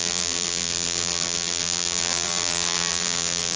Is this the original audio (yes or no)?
no